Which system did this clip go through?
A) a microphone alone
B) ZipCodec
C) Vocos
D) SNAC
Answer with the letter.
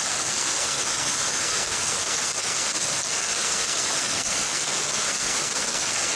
D